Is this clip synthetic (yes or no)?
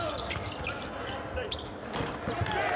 no